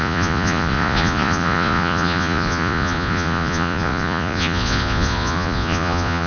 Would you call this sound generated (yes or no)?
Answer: yes